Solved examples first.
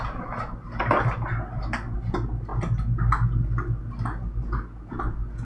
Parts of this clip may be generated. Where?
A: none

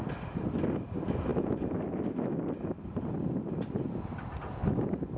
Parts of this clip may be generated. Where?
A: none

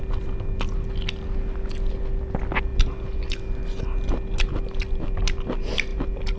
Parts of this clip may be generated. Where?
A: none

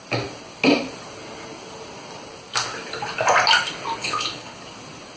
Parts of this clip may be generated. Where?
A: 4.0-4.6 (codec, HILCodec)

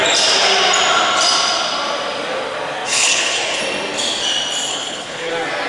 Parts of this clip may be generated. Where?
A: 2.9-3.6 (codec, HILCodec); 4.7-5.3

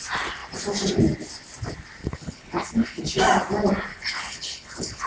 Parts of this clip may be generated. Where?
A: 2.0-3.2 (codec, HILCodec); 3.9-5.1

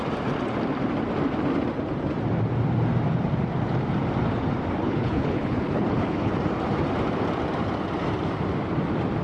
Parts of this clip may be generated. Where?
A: 4.8-6.3 (codec, HILCodec)